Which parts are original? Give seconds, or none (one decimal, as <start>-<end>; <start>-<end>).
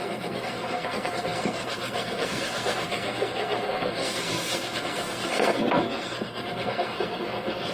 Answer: none